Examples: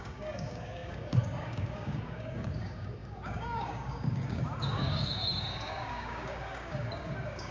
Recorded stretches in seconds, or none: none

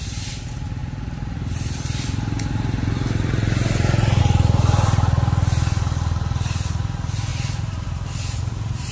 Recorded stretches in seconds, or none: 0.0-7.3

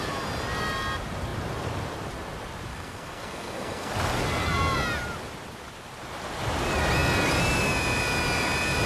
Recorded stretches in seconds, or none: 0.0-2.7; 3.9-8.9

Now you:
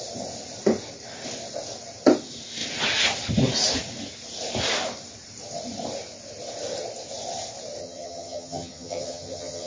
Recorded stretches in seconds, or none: 0.0-7.8

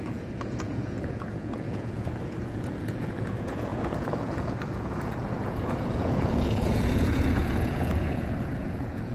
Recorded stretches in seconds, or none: none